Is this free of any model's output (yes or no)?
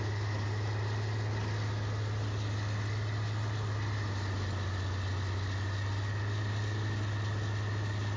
yes